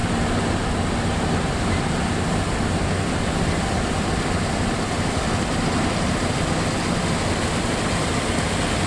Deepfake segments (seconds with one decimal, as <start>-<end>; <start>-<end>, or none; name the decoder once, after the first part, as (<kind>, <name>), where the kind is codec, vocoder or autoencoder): none